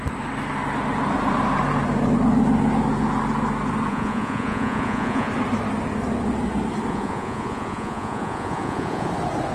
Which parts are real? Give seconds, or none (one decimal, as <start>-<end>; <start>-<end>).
0.0-3.9; 5.3-6.9; 9.1-9.5